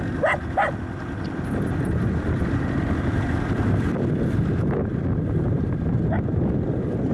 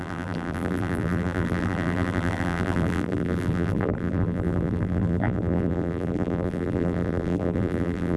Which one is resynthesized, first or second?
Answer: second